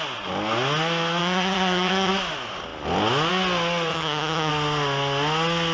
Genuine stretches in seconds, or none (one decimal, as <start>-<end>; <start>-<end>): 0.0-1.2; 2.1-3.9; 4.5-5.7